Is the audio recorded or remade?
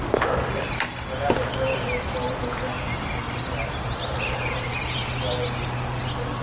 recorded